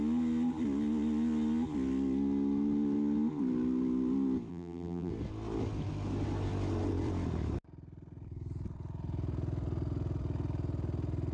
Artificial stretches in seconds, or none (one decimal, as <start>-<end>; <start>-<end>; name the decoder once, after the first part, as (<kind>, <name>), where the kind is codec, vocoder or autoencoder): 4.5-5.1 (vocoder, BigVGAN v2)

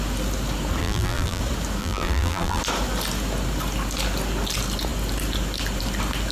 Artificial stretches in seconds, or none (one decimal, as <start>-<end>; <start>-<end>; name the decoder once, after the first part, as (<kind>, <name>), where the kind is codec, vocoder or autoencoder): 0.8-1.4 (vocoder, BigVGAN v2); 1.8-2.6

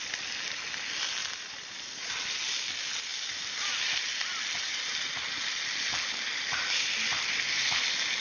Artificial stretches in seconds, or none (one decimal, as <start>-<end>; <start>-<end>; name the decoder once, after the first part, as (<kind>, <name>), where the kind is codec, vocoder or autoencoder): 1.2-2.1 (vocoder, BigVGAN v2)

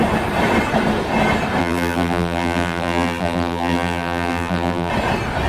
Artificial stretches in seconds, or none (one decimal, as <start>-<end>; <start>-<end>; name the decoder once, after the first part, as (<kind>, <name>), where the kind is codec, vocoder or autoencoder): 1.6-4.9 (vocoder, BigVGAN v2)